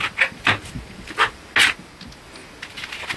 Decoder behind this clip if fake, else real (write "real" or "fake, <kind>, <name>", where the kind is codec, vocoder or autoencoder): real